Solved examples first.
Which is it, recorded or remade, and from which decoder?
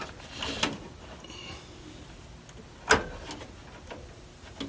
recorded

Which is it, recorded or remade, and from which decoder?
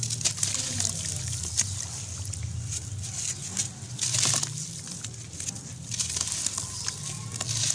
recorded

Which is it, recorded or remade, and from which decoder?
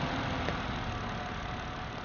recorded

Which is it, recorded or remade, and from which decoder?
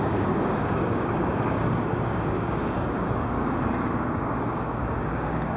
remade, codec, DAC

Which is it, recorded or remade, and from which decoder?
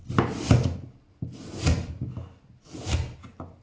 recorded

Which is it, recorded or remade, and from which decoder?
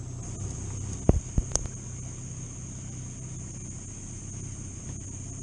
recorded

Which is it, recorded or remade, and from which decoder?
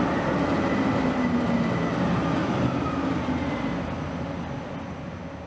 recorded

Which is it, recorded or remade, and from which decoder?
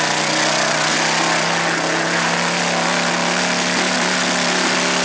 recorded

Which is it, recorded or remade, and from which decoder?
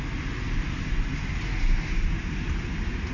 recorded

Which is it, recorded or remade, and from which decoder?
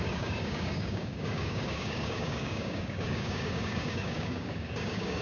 remade, codec, DAC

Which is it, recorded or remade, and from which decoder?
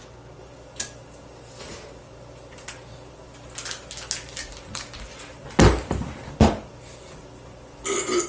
recorded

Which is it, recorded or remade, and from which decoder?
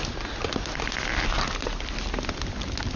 recorded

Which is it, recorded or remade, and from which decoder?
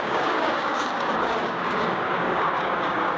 remade, codec, DAC